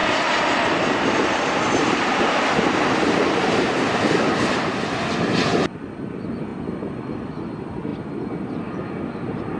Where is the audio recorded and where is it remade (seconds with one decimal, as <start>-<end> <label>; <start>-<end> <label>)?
0.0-4.7 remade; 4.7-9.6 recorded